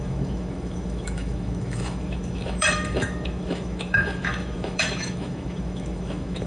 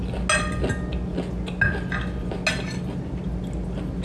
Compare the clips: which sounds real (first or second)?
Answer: second